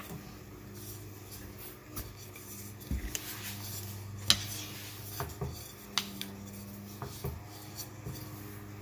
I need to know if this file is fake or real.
real